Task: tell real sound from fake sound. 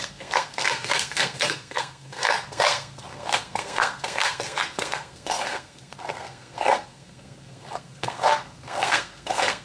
fake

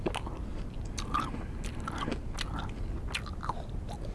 real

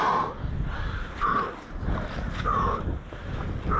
real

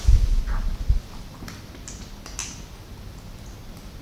real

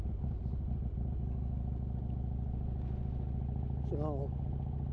real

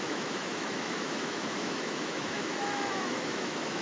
fake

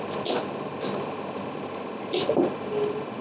real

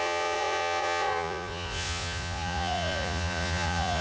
fake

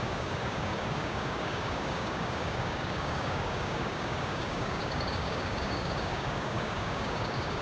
fake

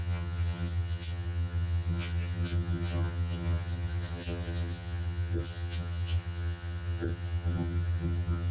fake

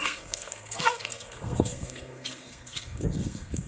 fake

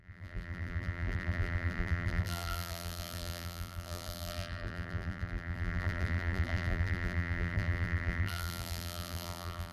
fake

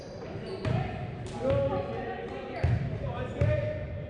fake